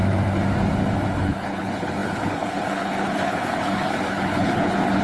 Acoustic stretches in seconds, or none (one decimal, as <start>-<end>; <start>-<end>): 0.0-1.2